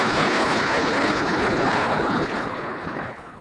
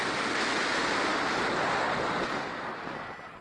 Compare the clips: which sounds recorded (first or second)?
second